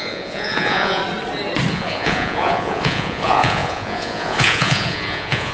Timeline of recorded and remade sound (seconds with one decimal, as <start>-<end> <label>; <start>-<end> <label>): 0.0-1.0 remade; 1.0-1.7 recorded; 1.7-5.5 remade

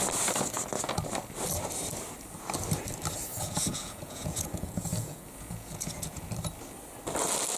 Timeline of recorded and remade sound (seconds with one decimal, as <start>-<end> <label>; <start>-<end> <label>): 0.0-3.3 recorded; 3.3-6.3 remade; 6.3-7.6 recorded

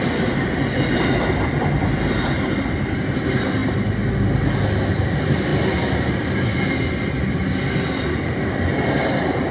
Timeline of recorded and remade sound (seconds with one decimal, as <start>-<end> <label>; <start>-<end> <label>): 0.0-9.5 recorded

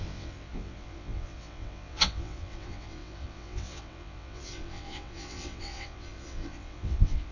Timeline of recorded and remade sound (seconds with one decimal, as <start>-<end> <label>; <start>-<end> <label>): 0.0-7.3 remade

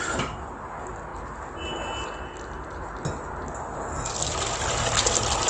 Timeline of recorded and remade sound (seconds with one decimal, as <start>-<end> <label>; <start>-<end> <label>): 0.0-5.5 recorded

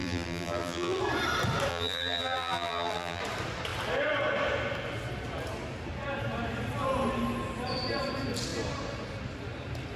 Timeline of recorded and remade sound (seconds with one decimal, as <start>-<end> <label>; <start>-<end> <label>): 0.0-1.0 remade; 1.0-1.7 recorded; 1.7-3.2 remade; 3.2-10.0 recorded

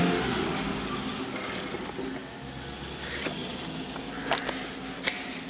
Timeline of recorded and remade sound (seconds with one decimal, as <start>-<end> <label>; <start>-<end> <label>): 0.0-0.8 remade; 0.8-5.5 recorded